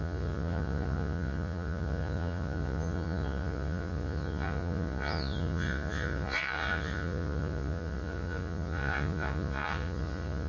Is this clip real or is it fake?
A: fake